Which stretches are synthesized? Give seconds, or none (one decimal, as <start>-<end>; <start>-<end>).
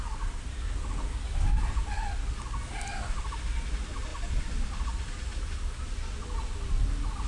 none